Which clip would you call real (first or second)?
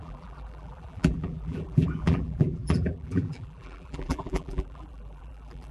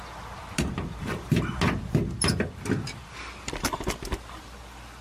second